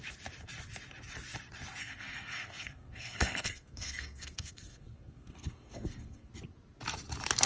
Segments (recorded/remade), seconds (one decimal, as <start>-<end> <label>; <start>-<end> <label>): 0.0-1.8 recorded; 1.8-6.3 remade; 6.3-7.5 recorded